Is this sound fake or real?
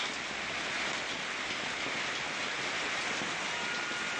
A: real